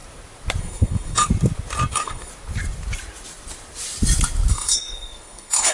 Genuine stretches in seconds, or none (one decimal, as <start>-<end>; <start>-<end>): 0.0-0.6; 1.3-1.9; 2.3-4.5

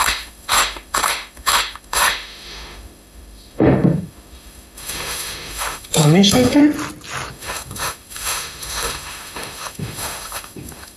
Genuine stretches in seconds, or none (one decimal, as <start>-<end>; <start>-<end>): 6.6-7.3

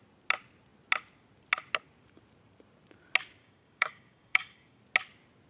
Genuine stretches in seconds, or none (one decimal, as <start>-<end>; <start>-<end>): 0.0-3.4; 4.8-5.5

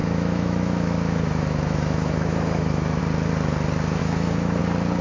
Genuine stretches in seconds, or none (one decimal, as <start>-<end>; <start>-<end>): 3.0-4.0; 4.6-5.0